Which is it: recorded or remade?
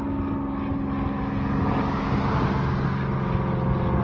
recorded